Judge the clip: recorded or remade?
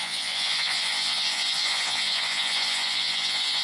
remade